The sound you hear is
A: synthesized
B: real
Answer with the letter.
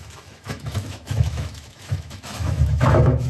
A